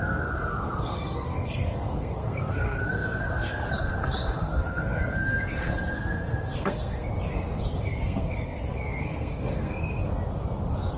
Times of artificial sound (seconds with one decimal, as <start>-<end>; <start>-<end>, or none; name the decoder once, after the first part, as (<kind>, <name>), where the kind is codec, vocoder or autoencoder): 0.0-7.1 (codec, SNAC); 7.8-10.0